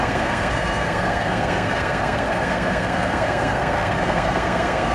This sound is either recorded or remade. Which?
remade